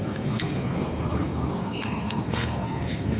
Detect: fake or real fake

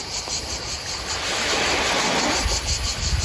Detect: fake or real real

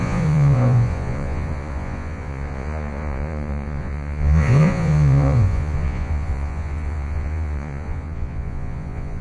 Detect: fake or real fake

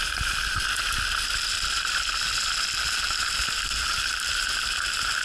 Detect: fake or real real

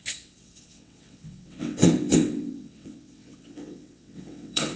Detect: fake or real fake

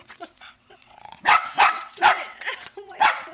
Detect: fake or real fake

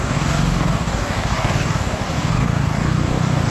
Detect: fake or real fake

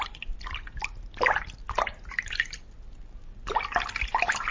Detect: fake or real real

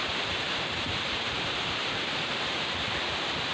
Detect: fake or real fake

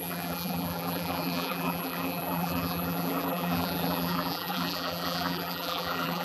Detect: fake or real fake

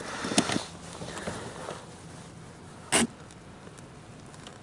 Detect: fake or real real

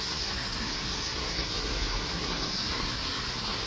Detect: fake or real fake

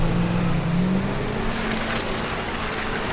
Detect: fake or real real